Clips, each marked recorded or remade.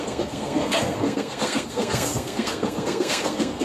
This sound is remade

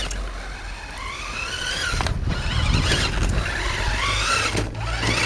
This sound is recorded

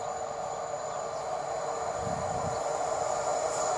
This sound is recorded